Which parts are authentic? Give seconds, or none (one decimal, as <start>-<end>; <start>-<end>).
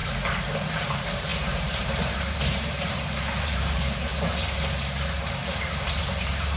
0.0-0.7; 4.1-5.3